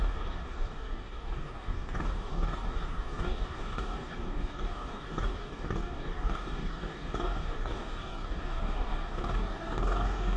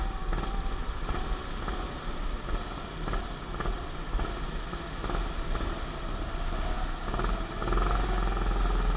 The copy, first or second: first